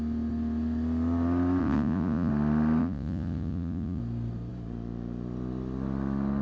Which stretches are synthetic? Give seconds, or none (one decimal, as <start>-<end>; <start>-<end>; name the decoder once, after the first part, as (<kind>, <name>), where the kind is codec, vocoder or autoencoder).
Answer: 1.6-2.3 (vocoder, Vocos); 2.8-4.0